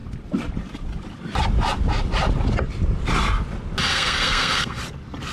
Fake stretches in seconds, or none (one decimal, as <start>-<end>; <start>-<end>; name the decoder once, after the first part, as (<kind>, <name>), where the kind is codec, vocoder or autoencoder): 3.9-4.8 (codec, SNAC)